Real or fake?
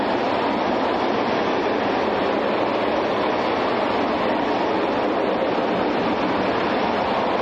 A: real